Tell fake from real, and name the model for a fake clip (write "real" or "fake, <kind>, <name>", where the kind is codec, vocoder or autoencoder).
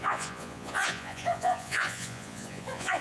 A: fake, vocoder, Vocos